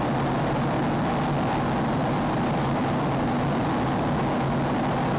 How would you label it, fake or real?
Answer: real